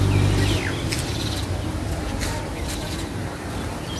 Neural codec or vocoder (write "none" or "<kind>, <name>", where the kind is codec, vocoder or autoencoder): none